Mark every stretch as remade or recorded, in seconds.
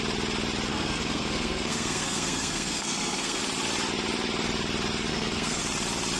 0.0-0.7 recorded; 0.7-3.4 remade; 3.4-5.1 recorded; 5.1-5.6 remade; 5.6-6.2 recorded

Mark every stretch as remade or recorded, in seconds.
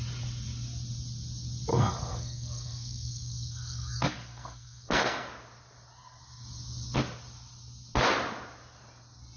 0.0-1.7 recorded; 1.7-5.3 remade; 5.3-9.4 recorded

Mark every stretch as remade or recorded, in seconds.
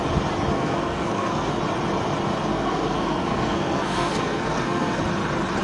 0.0-0.5 recorded; 0.5-1.5 remade; 1.5-2.5 recorded; 2.5-5.0 remade; 5.0-5.6 recorded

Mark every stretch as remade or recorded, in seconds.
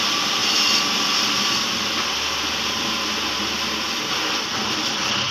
0.0-5.3 recorded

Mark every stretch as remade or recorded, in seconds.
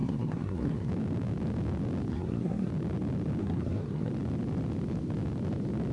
0.0-0.9 remade; 0.9-2.1 recorded; 2.1-2.7 remade; 2.7-3.4 recorded; 3.4-4.1 remade; 4.1-5.9 recorded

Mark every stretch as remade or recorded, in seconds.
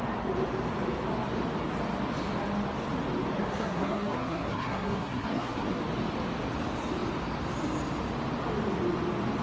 0.0-3.4 recorded; 3.4-5.8 remade; 5.8-9.4 recorded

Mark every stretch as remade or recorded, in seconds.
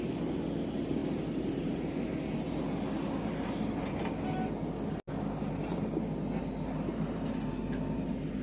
0.0-8.4 recorded